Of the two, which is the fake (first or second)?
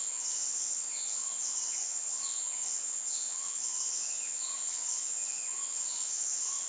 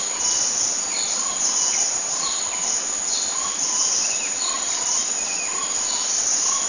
first